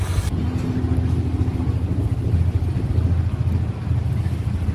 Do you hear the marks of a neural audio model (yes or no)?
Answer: no